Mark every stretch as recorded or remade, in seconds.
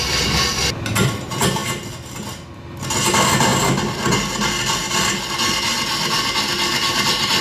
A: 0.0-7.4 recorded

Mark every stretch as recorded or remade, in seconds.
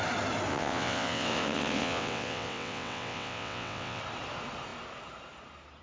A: 0.0-0.5 recorded; 0.5-4.0 remade; 4.0-5.8 recorded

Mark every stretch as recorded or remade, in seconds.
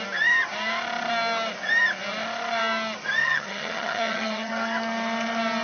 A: 0.0-3.2 recorded; 3.2-4.5 remade; 4.5-5.6 recorded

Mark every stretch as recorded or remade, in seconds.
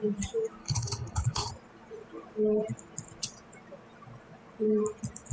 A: 0.0-0.6 recorded; 0.6-1.5 remade; 1.5-5.3 recorded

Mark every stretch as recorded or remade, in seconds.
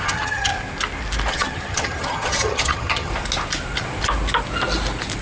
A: 0.0-0.5 remade; 0.5-1.3 recorded; 1.3-3.1 remade; 3.1-5.2 recorded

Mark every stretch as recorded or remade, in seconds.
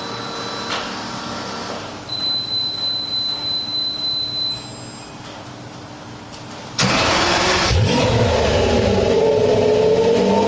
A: 0.0-10.5 recorded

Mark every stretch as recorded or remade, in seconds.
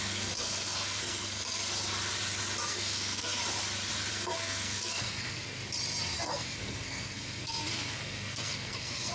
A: 0.0-1.6 remade; 1.6-2.6 recorded; 2.6-3.4 remade; 3.4-4.1 recorded; 4.1-5.6 remade; 5.6-6.2 recorded; 6.2-9.1 remade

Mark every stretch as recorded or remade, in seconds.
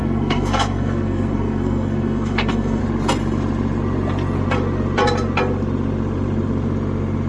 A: 0.0-2.8 remade; 2.8-7.3 recorded